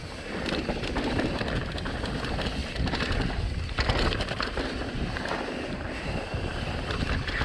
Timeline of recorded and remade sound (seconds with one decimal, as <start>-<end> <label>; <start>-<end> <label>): 0.0-7.4 recorded